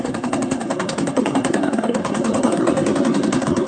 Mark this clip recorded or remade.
remade